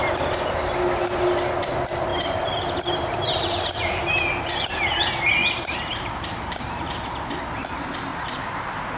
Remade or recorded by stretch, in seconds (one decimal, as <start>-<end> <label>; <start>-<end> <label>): 0.0-2.1 recorded; 2.1-7.3 remade; 7.3-8.1 recorded; 8.1-9.0 remade